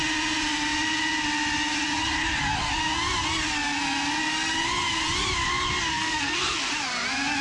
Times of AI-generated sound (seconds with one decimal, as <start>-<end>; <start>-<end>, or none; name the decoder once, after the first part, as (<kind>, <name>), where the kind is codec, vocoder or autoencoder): 5.9-6.7 (codec, SNAC)